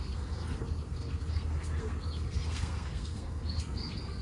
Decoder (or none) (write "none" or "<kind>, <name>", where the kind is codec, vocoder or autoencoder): codec, SNAC